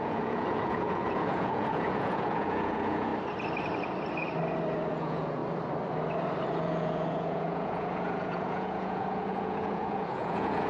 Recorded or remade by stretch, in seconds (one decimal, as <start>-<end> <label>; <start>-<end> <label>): 0.0-3.1 remade; 3.1-4.9 recorded; 4.9-5.4 remade; 5.4-6.5 recorded; 6.5-10.7 remade